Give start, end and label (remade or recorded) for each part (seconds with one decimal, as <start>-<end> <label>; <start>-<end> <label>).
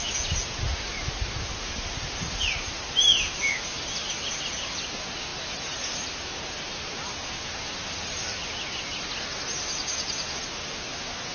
0.0-11.3 recorded